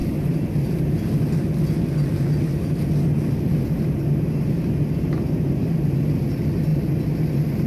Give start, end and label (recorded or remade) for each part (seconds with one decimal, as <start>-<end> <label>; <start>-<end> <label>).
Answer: 0.0-7.7 recorded